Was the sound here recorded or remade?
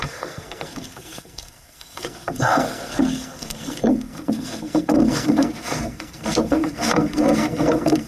remade